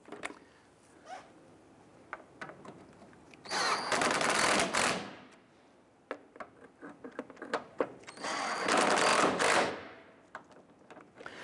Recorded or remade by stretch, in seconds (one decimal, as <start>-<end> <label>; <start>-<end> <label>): 0.0-11.4 recorded